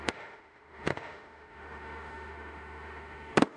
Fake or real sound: fake